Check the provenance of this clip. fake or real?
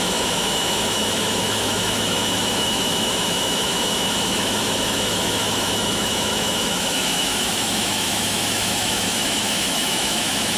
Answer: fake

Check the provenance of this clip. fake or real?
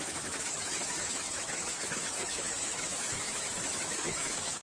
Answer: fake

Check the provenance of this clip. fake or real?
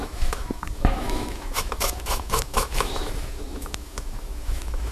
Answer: fake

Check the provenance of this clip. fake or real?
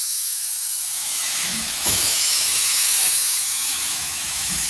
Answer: fake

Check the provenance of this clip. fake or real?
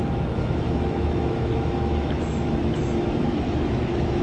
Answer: fake